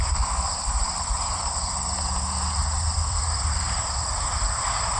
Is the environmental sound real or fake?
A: fake